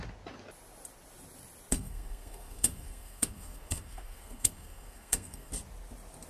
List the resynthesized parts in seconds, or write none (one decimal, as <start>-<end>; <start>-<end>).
1.7-5.5